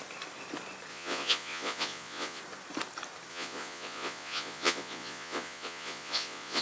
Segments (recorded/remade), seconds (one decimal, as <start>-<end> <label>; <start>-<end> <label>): 0.0-0.9 recorded; 0.9-2.4 remade; 2.4-3.3 recorded; 3.3-6.6 remade